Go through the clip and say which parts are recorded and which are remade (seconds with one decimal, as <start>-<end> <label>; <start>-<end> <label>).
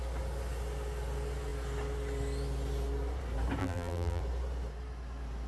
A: 0.0-3.6 recorded; 3.6-4.2 remade; 4.2-5.5 recorded